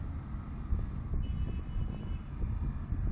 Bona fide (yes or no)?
yes